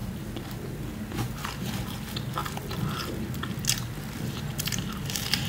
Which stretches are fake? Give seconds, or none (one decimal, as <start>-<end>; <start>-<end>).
0.0-2.4; 4.4-5.5